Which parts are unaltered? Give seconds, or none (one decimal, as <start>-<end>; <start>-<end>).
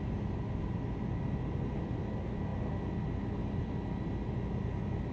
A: 0.0-5.1